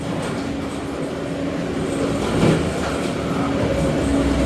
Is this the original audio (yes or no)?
yes